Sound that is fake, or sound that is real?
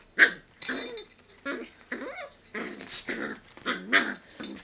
real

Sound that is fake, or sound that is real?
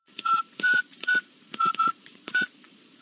fake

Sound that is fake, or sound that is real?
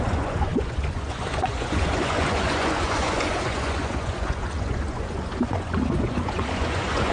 fake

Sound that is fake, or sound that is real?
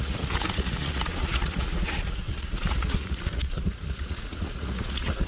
fake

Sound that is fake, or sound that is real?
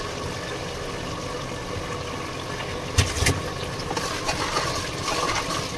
real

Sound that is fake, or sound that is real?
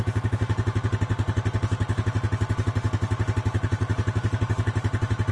real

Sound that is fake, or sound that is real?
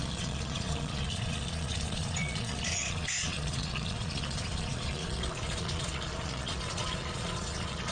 fake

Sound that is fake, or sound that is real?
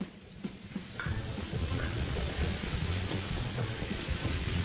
fake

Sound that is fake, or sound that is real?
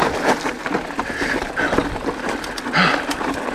real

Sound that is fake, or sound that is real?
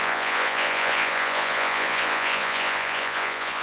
fake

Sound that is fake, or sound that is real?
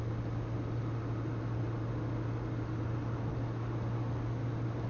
real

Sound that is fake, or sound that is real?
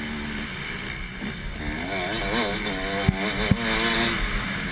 real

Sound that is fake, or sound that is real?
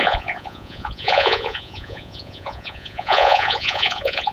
fake